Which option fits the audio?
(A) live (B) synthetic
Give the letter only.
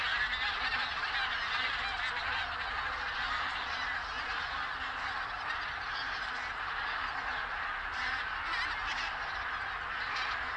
A